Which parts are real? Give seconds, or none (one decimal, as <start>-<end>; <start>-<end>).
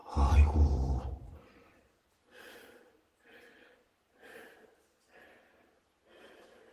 1.8-6.7